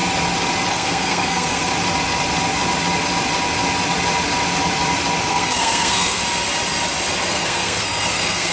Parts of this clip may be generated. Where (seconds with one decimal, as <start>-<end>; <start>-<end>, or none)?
0.7-1.7; 5.3-6.2; 7.3-8.5